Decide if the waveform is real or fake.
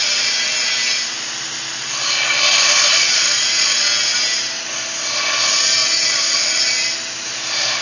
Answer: real